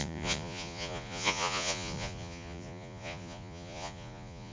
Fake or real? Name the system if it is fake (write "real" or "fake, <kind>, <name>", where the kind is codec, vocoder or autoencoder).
fake, vocoder, Vocos